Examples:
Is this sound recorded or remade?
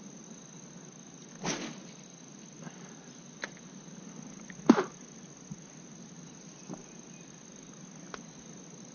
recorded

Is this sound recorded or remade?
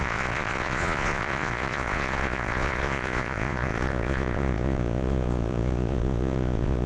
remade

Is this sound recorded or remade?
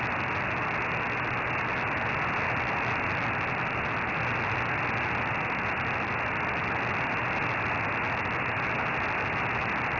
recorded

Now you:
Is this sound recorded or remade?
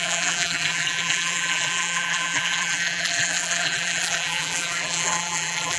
remade